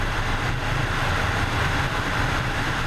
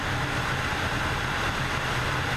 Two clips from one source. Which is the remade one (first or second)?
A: first